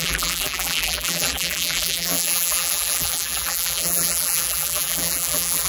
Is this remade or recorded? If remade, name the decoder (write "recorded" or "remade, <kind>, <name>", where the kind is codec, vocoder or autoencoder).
remade, vocoder, BigVGAN v2